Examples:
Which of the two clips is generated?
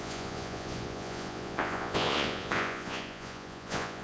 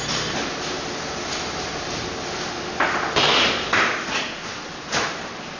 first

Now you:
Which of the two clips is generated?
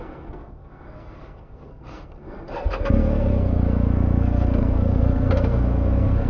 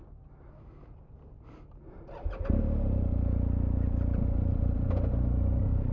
first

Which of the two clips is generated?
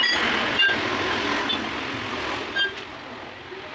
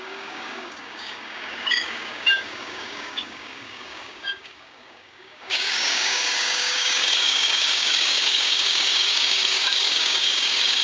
second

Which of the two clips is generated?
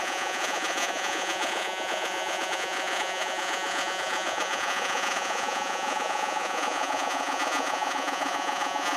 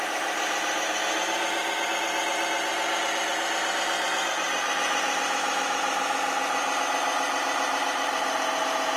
first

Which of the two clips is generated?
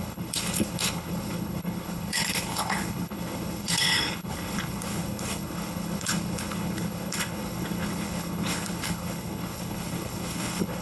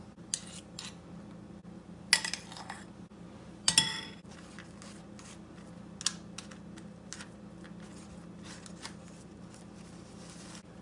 first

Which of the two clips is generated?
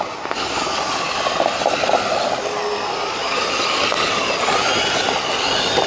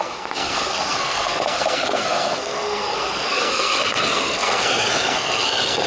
second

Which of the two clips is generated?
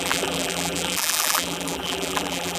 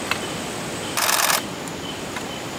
first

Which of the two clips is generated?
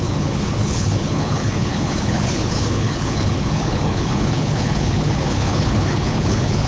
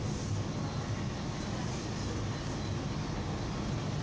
first